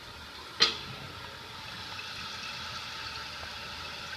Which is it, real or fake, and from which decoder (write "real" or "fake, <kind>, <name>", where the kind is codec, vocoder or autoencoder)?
real